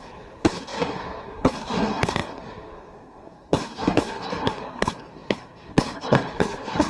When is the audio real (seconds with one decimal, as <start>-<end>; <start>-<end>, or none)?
none